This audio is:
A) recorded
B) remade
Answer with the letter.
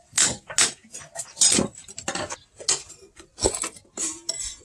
A